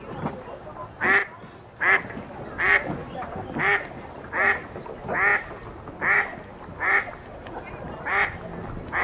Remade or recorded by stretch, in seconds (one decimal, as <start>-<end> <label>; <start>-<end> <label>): 0.0-1.2 recorded; 1.2-1.8 remade; 1.8-3.0 recorded; 3.0-3.6 remade; 3.6-9.0 recorded